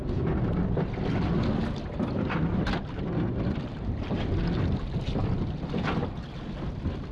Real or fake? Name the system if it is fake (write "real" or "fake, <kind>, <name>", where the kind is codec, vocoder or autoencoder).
real